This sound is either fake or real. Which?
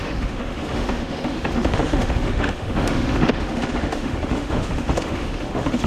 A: fake